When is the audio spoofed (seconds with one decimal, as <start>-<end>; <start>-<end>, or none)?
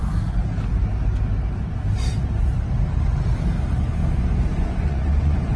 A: 4.5-5.6